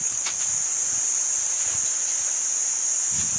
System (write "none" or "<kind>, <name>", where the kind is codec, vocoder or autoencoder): none